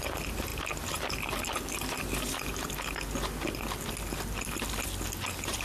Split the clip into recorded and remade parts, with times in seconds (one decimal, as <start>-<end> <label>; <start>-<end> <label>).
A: 0.0-5.6 recorded